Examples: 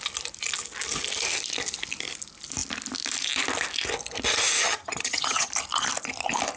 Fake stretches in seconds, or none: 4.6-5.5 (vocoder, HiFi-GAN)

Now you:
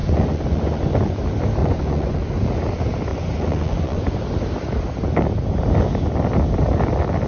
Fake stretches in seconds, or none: 0.0-0.9 (vocoder, Vocos); 1.6-2.2; 3.1-4.0

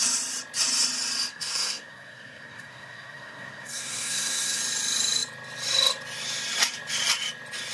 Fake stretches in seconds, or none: 1.3-4.6 (codec, SNAC)

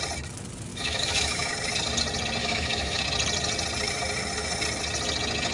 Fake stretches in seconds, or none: 0.7-1.5 (autoencoder, DAC-VAE); 2.4-3.0

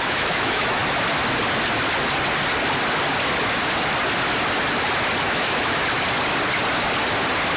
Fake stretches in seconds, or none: 0.0-0.8 (autoencoder, DAC-VAE); 5.2-5.8